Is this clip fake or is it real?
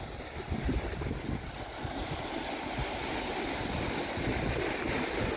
real